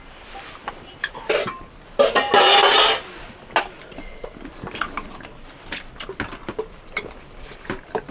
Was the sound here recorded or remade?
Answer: recorded